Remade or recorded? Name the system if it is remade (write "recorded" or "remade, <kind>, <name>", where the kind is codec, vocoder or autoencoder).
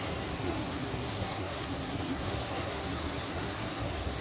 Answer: remade, codec, SNAC